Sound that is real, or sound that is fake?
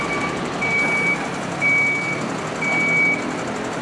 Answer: real